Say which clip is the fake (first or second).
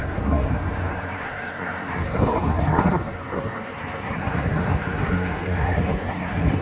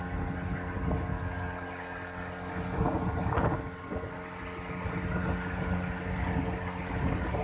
first